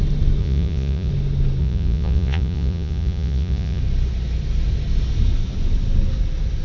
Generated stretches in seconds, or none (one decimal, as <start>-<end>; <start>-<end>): 0.4-1.1; 1.6-3.8